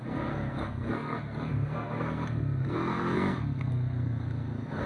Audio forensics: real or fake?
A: fake